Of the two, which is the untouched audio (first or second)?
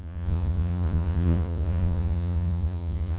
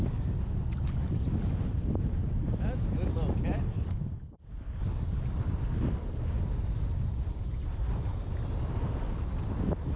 second